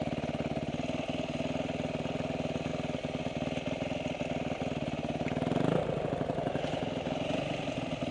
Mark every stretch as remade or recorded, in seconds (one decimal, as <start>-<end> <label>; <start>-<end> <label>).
0.0-8.1 recorded